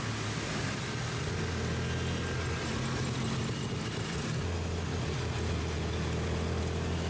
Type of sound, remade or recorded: recorded